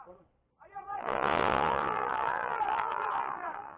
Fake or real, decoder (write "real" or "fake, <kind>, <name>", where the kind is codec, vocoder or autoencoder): fake, vocoder, Vocos